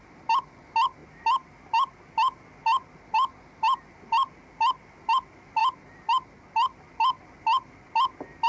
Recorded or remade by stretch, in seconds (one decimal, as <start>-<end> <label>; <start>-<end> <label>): 0.0-8.5 recorded